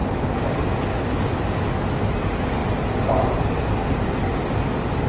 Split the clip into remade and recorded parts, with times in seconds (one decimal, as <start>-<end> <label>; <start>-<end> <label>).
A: 0.0-2.6 recorded; 2.6-4.1 remade; 4.1-5.1 recorded